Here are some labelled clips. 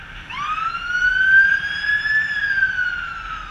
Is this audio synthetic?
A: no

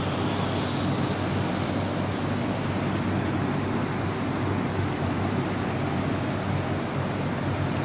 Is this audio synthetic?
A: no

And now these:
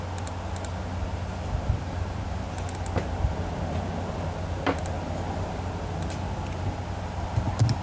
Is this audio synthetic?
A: no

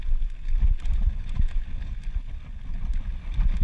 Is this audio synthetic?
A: no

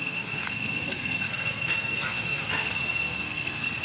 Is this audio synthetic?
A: yes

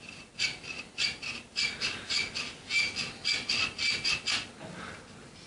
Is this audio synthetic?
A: no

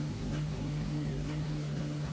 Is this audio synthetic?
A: yes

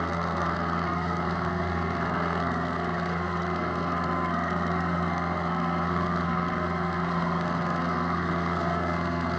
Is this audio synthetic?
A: yes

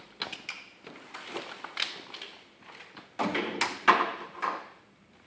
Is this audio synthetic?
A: no